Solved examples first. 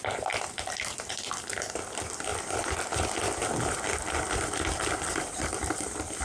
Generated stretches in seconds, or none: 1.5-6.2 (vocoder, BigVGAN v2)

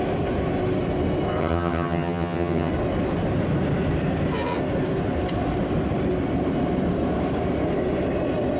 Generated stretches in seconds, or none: 1.4-2.7 (vocoder, HiFi-GAN)

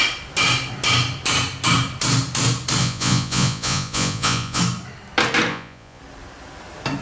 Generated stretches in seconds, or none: 2.8-4.6 (vocoder, Vocos); 5.5-6.0